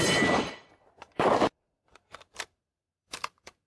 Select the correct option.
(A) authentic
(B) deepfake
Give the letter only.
B